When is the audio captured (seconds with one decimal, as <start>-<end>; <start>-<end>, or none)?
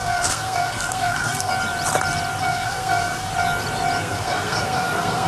1.5-2.4; 3.3-4.0